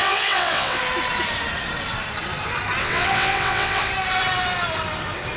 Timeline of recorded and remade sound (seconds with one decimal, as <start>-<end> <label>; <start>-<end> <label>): 0.0-0.8 remade; 0.8-2.8 recorded; 2.8-3.9 remade; 3.9-5.4 recorded